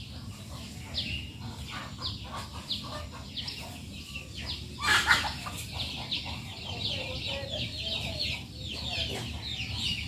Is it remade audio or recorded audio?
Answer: recorded